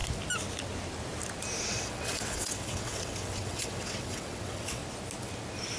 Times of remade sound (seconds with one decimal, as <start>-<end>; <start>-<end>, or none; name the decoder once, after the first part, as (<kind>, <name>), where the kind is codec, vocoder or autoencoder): 1.6-4.8 (vocoder, WaveNeXt)